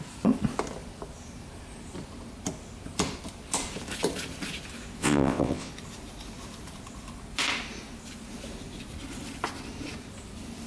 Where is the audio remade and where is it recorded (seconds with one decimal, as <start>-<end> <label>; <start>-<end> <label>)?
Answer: 0.0-5.0 recorded; 5.0-5.7 remade; 5.7-10.7 recorded